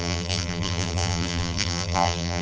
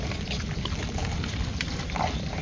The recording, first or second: second